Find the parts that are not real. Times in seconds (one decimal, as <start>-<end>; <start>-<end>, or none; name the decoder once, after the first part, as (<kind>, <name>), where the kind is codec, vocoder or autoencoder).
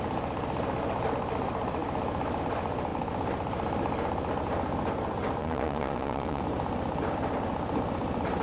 5.4-6.4 (vocoder, Vocos)